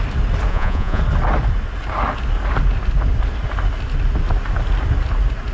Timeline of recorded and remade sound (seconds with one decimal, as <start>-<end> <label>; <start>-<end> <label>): 0.0-0.5 recorded; 0.5-1.0 remade; 1.0-5.5 recorded